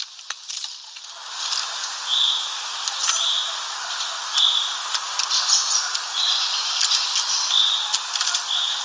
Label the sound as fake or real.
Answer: real